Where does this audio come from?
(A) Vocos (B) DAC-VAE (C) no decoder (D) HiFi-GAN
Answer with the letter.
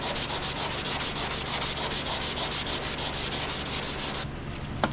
C